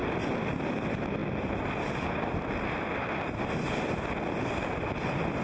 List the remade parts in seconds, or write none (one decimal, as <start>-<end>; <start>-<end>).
none